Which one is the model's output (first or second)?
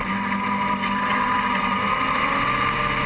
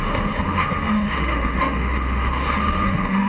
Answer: second